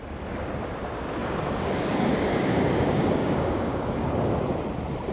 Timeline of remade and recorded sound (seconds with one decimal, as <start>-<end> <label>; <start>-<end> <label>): 0.0-1.2 recorded; 1.2-4.3 remade; 4.3-5.1 recorded